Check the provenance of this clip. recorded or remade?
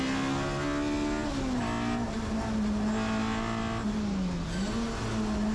recorded